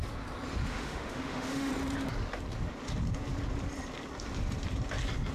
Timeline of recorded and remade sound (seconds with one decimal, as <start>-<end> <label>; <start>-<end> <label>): 0.0-0.7 recorded; 0.7-1.7 remade; 1.7-5.3 recorded

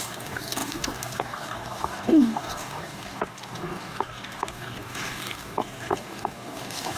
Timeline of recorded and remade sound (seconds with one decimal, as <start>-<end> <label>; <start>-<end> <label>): 0.0-7.0 remade

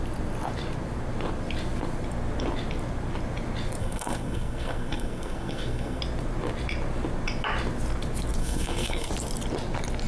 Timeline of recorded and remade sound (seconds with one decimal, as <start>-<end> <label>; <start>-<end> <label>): 0.0-3.8 recorded; 3.8-6.0 remade; 6.0-8.4 recorded; 8.4-9.1 remade; 9.1-10.1 recorded

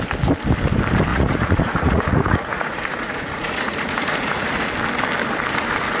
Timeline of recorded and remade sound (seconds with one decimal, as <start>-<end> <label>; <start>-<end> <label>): 0.0-1.1 recorded; 1.1-4.7 remade; 4.7-6.0 recorded

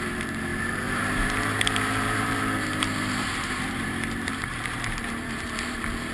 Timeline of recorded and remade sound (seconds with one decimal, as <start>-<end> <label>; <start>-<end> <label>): 0.0-6.1 remade

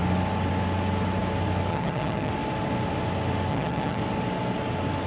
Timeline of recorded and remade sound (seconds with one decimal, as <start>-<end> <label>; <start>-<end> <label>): 0.0-1.7 recorded; 1.7-2.3 remade; 2.3-3.5 recorded; 3.5-4.0 remade; 4.0-5.1 recorded

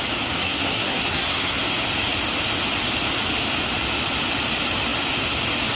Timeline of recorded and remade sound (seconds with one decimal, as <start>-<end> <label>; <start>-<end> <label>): 0.0-0.4 recorded; 0.4-1.6 remade; 1.6-5.7 recorded